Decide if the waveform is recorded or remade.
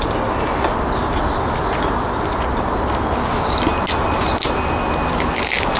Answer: recorded